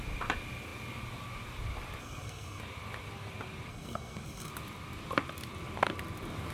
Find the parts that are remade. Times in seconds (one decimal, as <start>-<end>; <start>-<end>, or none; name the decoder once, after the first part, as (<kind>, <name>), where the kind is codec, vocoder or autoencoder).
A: 2.0-2.6 (codec, SNAC); 3.7-4.5